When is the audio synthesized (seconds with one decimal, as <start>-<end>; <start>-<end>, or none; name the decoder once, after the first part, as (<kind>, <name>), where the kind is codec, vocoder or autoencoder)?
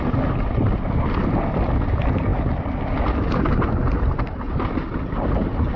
none